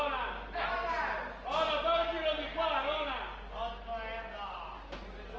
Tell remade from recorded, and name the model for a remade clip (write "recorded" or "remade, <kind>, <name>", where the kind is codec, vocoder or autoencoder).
recorded